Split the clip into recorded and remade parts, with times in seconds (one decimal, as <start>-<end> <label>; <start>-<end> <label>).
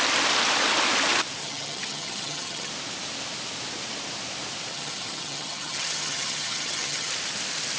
0.0-1.4 recorded; 1.4-2.7 remade; 2.7-4.7 recorded; 4.7-7.1 remade; 7.1-7.8 recorded